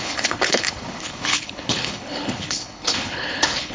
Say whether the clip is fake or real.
fake